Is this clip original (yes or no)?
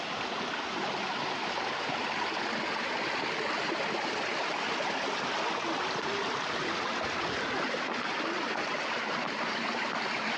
yes